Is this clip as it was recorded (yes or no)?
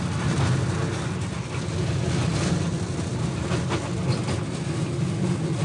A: yes